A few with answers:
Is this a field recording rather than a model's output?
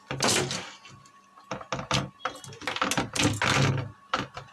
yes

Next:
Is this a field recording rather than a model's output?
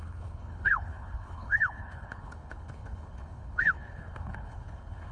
no